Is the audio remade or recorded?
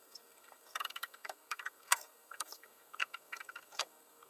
remade